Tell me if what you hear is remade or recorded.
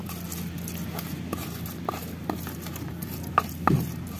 recorded